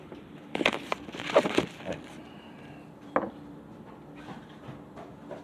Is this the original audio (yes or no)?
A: yes